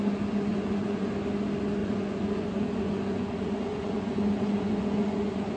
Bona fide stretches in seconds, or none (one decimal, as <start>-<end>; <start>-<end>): 0.0-0.5; 1.1-1.8